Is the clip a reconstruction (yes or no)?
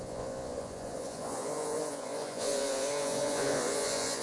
yes